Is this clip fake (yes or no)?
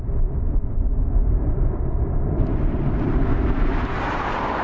no